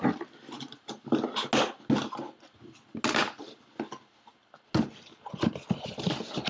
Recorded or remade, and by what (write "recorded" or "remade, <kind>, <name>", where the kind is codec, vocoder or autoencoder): recorded